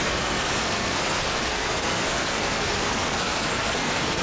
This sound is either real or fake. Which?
fake